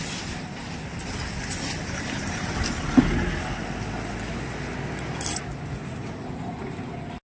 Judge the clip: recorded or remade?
recorded